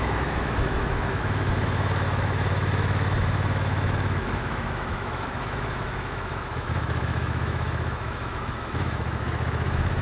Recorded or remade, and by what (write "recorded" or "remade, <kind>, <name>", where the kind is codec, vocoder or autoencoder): remade, autoencoder, DAC-VAE